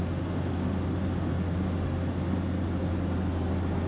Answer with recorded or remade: recorded